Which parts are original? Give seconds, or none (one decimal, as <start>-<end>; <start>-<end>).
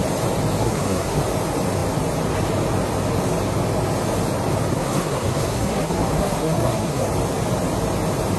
0.0-0.6; 1.2-4.7; 7.1-8.4